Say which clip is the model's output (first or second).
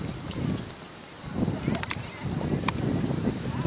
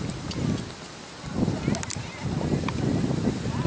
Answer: first